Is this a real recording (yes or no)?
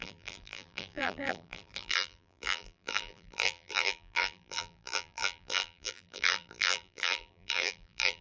no